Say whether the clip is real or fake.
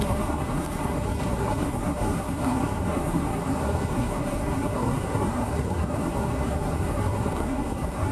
fake